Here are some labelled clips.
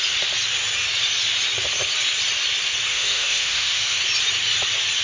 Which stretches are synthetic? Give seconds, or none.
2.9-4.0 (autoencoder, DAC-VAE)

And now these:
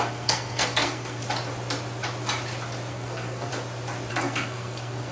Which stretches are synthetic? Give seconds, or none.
0.0-1.2 (codec, SNAC); 2.9-3.5; 4.1-5.1

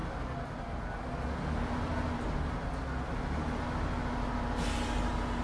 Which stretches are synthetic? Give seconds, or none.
none